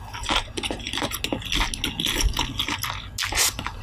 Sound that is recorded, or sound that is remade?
recorded